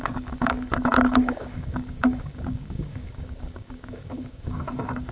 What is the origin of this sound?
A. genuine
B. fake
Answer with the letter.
B